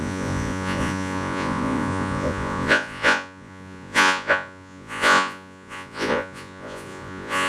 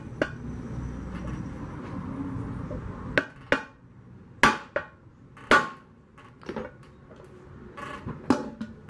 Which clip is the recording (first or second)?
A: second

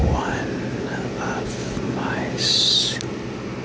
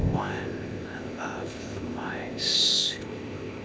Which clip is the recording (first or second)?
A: first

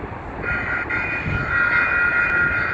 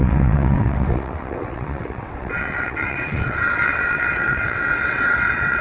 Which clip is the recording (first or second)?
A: first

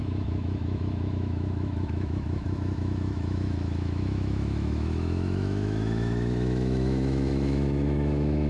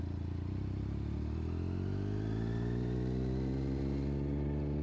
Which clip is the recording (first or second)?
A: second